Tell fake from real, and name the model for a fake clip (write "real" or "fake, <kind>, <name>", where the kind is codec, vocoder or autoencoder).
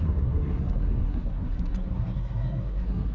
fake, codec, SNAC